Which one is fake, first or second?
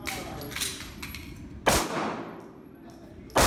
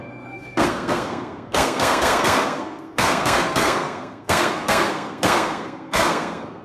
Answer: second